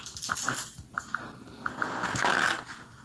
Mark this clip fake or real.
real